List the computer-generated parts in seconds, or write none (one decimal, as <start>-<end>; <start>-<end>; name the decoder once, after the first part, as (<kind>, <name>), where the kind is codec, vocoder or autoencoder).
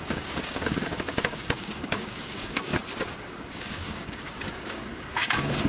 0.0-2.7 (codec, DAC); 3.2-5.7